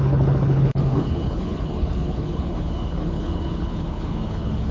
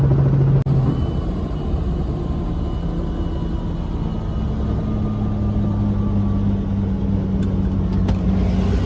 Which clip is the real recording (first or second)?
second